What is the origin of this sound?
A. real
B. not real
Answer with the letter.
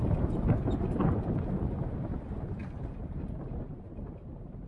B